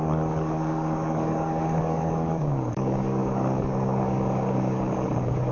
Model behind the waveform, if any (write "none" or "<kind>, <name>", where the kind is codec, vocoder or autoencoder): codec, DAC